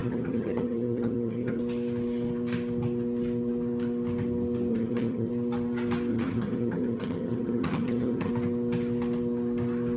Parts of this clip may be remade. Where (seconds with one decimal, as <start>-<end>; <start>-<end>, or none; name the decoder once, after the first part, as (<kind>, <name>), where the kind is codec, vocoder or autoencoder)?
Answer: 0.0-1.6 (vocoder, HiFi-GAN); 4.7-5.3; 6.1-8.3